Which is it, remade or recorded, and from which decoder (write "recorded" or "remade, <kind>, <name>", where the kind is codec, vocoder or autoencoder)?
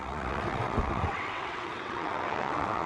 remade, vocoder, WaveNeXt